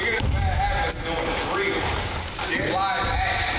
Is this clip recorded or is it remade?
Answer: recorded